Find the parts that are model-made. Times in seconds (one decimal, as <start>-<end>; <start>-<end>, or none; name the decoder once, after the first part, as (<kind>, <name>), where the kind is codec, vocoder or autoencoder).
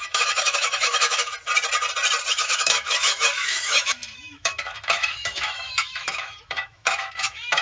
0.0-1.3 (autoencoder, DAC-VAE); 2.3-7.6